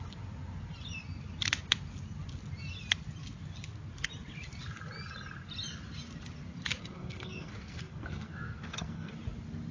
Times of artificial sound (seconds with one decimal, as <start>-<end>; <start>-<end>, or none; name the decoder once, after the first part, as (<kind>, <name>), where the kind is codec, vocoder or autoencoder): 6.8-9.1 (codec, SNAC)